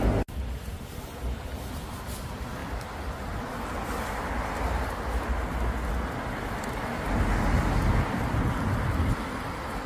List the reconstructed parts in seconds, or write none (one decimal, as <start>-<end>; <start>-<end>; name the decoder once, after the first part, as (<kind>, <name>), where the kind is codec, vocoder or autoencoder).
none